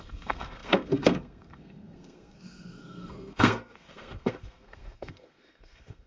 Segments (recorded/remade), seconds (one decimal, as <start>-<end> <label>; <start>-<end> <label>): 0.0-6.1 remade